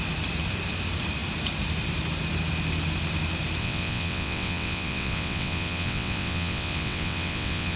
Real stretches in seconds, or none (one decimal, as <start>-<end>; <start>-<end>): 0.0-3.6